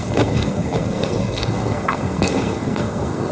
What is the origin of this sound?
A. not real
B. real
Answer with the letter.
A